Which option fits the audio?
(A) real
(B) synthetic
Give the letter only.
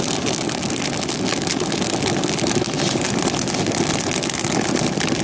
A